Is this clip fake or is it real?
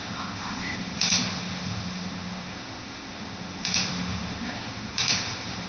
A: fake